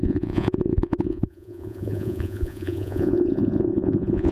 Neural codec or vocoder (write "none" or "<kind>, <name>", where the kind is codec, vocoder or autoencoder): vocoder, Vocos